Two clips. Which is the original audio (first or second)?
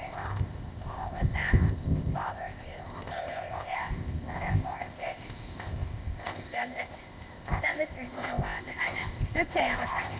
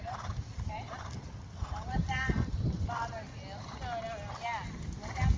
second